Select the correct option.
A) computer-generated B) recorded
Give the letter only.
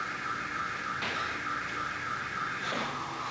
B